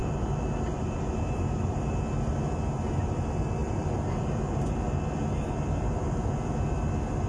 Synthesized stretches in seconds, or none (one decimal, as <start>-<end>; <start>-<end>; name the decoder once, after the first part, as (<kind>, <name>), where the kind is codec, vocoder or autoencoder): 0.0-1.9 (vocoder, BigVGAN v2); 3.6-5.0